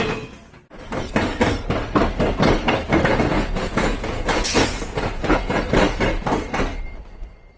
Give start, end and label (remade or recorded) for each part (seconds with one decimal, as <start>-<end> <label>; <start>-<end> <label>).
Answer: 0.0-3.1 recorded; 3.1-5.6 remade; 5.6-7.6 recorded